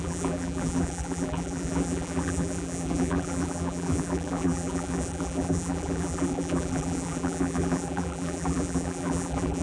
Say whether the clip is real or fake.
fake